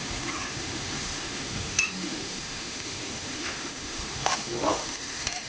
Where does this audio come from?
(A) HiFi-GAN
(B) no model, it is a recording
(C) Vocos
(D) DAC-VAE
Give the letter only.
D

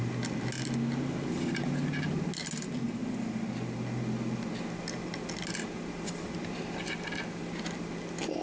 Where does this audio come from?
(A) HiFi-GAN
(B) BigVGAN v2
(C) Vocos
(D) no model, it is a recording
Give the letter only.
D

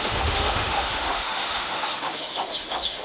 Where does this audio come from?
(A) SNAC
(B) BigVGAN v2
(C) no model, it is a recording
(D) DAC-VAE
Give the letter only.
D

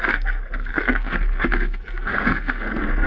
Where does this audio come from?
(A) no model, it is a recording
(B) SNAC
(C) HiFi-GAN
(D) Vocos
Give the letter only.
B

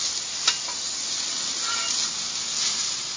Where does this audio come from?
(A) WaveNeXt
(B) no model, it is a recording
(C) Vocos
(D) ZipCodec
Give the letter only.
B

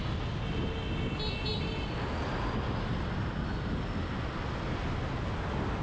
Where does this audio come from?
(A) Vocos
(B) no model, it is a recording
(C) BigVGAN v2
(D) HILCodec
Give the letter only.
B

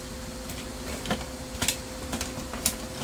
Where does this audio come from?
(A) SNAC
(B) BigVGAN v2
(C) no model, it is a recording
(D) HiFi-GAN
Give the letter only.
C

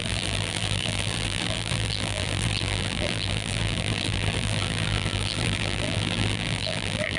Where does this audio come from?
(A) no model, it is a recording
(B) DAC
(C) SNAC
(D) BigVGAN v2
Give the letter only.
D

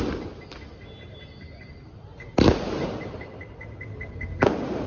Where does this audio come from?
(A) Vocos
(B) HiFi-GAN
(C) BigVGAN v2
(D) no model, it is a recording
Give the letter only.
D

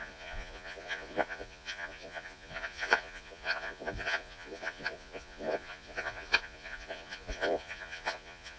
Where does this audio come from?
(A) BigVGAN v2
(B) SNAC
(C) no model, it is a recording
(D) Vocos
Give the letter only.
D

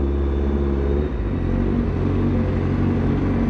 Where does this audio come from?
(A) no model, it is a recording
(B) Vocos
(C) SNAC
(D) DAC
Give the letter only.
A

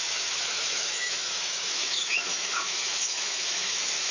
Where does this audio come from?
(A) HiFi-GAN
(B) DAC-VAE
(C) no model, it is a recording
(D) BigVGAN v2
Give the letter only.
B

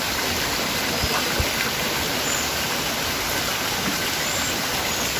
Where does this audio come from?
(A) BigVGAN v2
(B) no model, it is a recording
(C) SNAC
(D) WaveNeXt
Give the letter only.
B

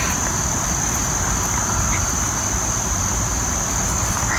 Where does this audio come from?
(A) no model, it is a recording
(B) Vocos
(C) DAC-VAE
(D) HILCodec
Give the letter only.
A